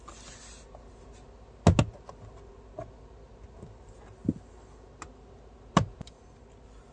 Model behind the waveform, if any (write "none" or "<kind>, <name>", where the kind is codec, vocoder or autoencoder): none